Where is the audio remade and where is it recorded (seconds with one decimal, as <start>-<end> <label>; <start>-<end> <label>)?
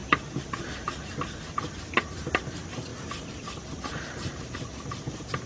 0.0-5.5 recorded